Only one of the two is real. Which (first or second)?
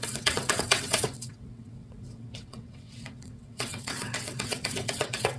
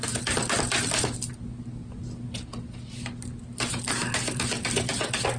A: second